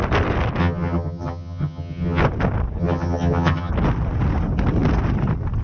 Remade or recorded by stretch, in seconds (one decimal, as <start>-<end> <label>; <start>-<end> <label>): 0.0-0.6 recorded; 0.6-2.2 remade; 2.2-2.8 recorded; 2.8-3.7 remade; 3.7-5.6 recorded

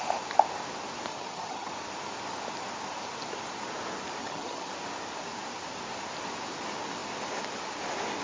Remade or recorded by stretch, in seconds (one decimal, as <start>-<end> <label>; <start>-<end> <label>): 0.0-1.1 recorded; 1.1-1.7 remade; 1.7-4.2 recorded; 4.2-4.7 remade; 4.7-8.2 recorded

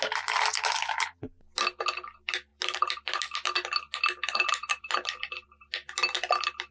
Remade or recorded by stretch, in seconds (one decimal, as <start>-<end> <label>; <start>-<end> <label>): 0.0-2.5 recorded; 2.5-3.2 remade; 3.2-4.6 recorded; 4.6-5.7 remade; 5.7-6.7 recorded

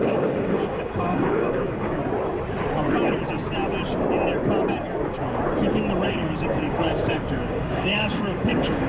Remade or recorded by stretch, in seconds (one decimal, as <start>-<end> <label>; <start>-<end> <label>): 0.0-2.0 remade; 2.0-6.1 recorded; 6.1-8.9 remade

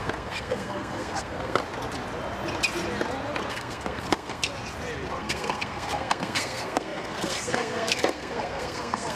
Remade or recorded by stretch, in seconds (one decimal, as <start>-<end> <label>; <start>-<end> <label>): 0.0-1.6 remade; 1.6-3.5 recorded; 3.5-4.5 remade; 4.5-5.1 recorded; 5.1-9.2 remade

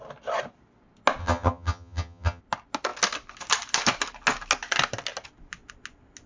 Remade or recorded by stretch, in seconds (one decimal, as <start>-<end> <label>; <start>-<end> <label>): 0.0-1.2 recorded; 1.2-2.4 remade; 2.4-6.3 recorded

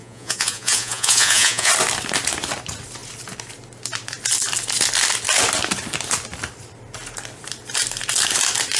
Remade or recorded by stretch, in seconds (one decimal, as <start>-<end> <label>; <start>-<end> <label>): 0.0-1.7 remade; 1.7-8.8 recorded